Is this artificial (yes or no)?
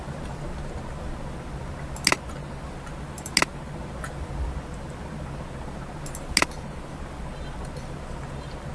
no